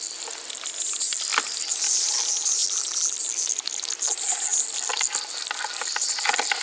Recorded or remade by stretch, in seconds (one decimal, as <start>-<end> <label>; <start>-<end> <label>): 0.0-6.6 recorded